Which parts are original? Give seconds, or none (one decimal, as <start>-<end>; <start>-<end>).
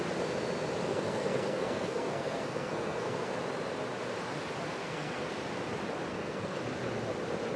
0.0-0.9; 3.4-4.8; 5.3-6.1; 6.6-7.6